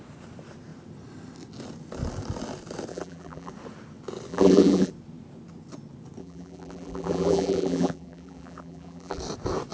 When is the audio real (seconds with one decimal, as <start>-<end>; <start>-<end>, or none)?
0.0-2.9; 3.5-4.3; 4.9-6.2; 9.2-9.7